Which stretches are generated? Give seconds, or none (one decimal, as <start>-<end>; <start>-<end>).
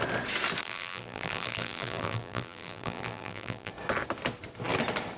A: 0.6-3.7